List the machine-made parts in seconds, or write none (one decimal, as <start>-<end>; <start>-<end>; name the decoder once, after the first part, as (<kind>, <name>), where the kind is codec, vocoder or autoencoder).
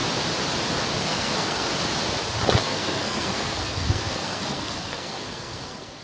1.0-1.7 (codec, SNAC); 2.6-6.0